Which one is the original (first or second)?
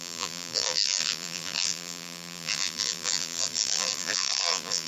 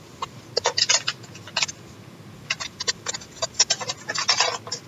second